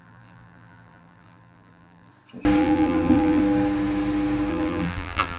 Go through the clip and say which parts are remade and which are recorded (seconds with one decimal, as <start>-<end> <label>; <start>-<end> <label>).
0.0-2.1 remade; 2.1-2.6 recorded; 2.6-3.4 remade; 3.4-4.5 recorded; 4.5-5.4 remade